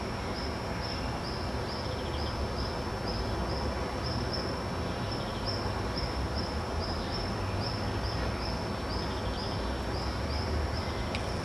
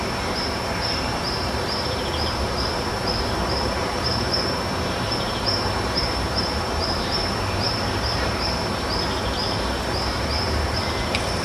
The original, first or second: first